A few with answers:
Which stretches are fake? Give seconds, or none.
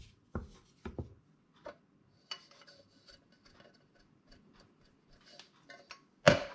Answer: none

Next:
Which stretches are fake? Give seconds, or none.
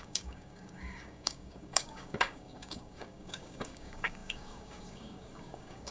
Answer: 0.0-5.9